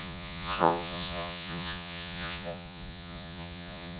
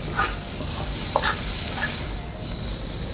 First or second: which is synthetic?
first